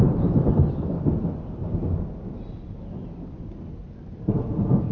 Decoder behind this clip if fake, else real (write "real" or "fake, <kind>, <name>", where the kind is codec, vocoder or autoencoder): real